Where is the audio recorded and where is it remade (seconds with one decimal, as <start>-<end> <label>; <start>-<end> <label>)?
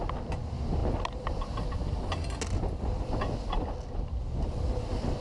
0.0-5.2 recorded